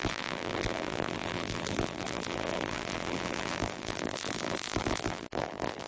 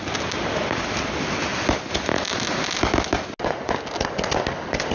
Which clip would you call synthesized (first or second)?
first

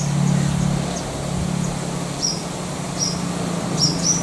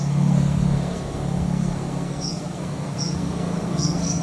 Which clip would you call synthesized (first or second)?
second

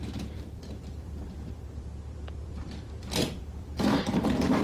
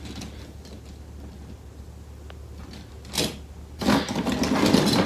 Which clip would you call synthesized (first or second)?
first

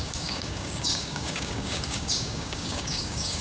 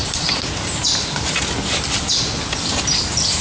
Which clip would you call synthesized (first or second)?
first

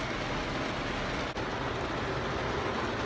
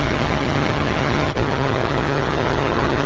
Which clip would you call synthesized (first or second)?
second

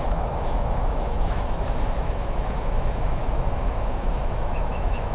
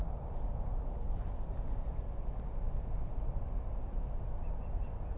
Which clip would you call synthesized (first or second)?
first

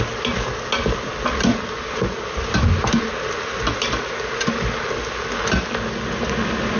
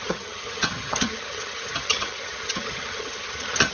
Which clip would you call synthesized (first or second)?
second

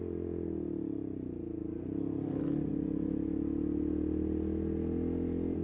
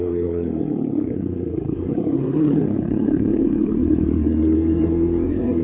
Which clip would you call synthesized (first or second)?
second